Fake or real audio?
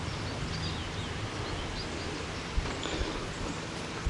real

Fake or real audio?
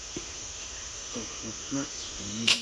fake